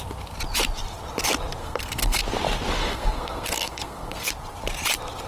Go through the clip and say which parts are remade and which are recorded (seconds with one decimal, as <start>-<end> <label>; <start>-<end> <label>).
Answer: 0.0-1.6 recorded; 1.6-2.2 remade; 2.2-2.8 recorded; 2.8-4.3 remade; 4.3-5.3 recorded